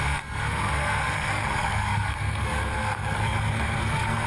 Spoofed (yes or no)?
yes